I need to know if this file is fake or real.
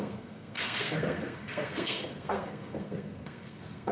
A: fake